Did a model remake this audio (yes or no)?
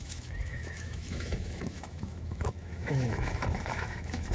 yes